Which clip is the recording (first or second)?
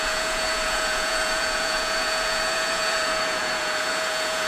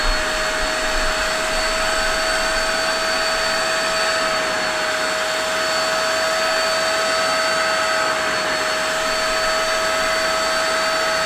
second